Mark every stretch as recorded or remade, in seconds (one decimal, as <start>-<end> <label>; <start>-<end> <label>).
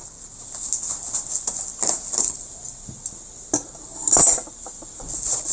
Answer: 0.0-5.5 recorded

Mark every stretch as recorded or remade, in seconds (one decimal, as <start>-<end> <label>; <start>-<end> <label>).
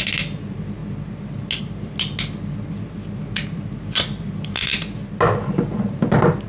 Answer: 0.0-6.5 recorded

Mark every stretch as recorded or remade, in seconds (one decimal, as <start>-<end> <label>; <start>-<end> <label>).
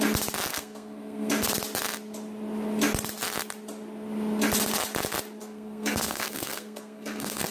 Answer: 0.0-0.5 recorded; 0.5-1.3 remade; 1.3-5.4 recorded; 5.4-7.5 remade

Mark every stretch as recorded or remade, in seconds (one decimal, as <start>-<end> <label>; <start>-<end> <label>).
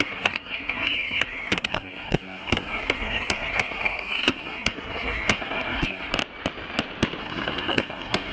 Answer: 0.0-6.1 remade; 6.1-7.2 recorded; 7.2-8.3 remade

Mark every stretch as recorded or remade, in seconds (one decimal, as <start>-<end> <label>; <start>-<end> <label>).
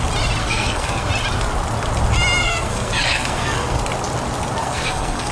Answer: 0.0-0.4 recorded; 0.4-1.1 remade; 1.1-2.4 recorded; 2.4-3.8 remade; 3.8-4.6 recorded; 4.6-5.3 remade